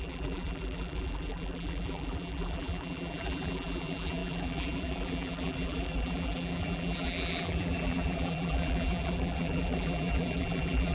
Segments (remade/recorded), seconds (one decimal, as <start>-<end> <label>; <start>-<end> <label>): 0.0-10.9 remade